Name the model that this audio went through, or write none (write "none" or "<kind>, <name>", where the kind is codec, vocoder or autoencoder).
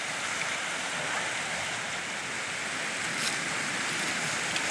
none